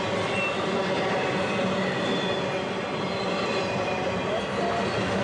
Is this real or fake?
real